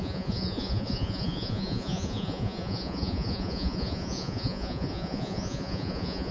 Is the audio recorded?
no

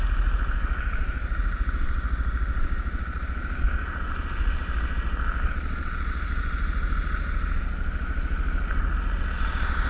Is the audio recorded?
yes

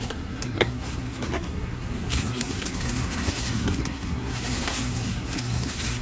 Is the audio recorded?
no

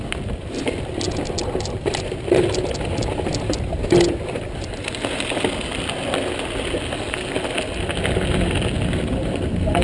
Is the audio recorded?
yes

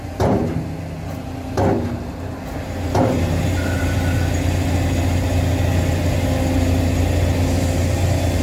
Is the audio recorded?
yes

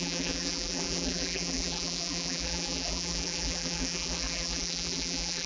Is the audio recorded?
no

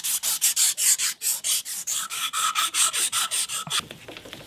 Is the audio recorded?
yes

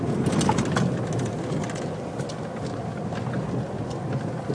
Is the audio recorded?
yes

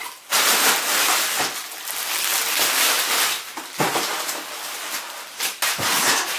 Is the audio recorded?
yes